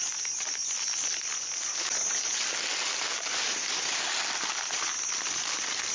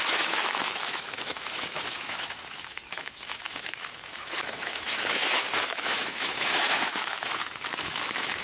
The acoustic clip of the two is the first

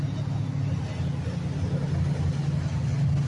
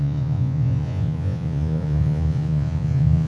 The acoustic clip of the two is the first